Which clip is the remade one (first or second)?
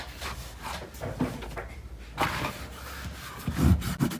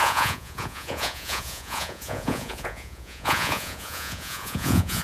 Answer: second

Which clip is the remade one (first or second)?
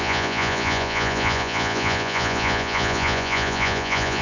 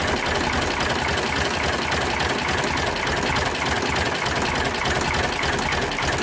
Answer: first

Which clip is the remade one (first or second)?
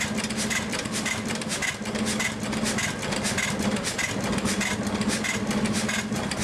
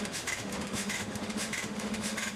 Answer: second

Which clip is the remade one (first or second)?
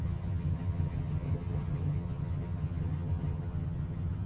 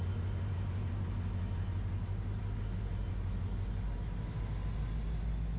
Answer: first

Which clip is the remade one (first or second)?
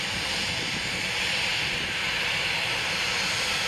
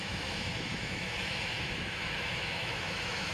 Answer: second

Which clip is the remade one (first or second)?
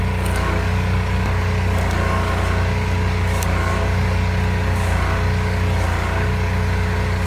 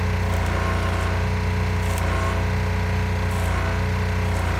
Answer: first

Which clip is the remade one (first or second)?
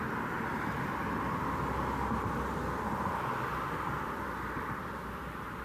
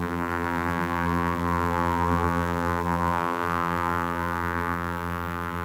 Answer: second